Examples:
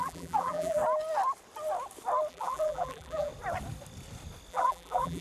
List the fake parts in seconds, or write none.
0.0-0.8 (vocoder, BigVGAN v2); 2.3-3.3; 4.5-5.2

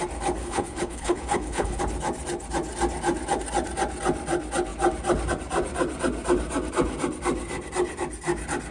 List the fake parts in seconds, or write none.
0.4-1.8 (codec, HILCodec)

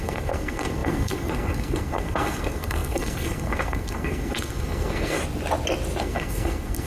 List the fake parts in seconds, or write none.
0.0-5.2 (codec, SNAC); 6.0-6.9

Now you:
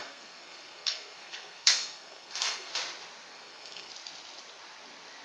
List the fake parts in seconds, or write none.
0.0-2.7 (codec, SNAC); 3.3-3.9

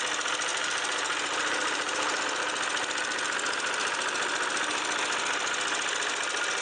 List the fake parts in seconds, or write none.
0.5-2.2 (vocoder, BigVGAN v2)

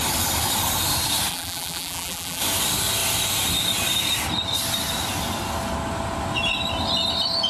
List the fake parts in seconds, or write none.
1.3-2.4 (vocoder, BigVGAN v2)